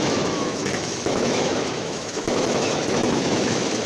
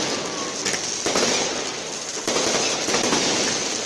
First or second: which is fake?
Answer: first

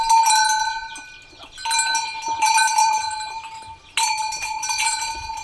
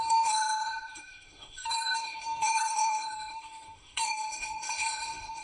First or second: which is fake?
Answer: second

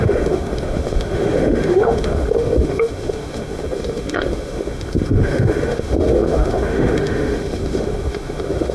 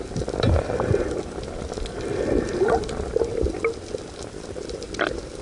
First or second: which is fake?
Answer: first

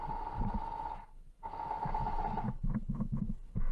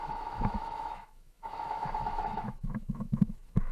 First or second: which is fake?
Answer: second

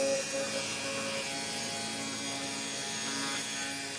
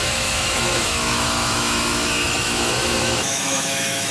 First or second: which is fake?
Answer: second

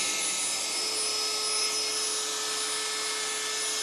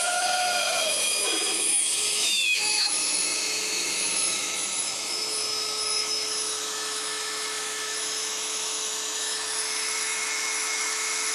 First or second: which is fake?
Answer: second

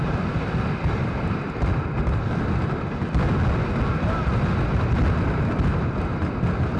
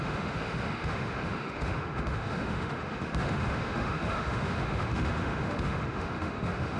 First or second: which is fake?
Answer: second